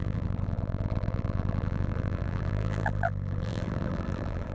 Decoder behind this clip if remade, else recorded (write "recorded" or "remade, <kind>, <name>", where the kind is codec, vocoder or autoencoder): remade, vocoder, BigVGAN v2